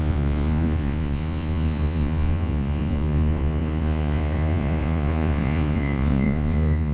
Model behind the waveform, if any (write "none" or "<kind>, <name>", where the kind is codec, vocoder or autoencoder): vocoder, Vocos